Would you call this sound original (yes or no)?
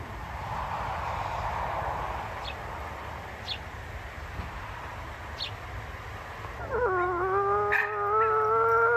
yes